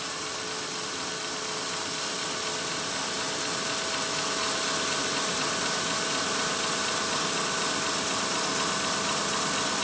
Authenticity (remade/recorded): recorded